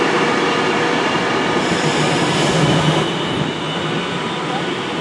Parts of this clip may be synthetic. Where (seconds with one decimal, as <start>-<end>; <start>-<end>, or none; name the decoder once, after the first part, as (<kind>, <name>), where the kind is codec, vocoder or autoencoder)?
none